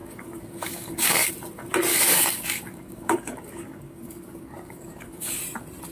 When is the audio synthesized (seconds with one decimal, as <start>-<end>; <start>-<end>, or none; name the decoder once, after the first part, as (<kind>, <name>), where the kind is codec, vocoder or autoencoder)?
0.0-1.3 (codec, DAC); 1.9-5.4